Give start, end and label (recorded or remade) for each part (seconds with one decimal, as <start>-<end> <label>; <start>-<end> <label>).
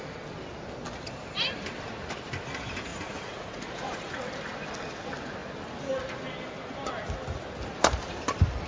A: 0.0-2.9 recorded; 2.9-4.2 remade; 4.2-8.7 recorded